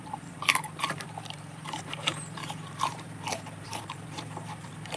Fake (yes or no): yes